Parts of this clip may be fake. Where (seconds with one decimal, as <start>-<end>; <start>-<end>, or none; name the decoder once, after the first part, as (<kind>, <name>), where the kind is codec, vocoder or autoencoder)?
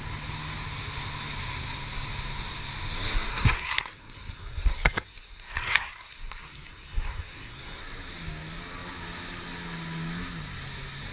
3.3-7.8 (codec, SNAC)